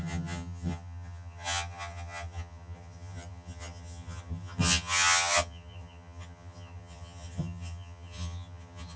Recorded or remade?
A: remade